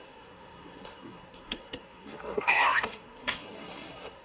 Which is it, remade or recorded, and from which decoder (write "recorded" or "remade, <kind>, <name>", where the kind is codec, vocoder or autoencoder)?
remade, codec, SNAC